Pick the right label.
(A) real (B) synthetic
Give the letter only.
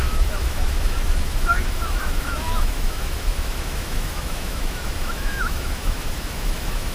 B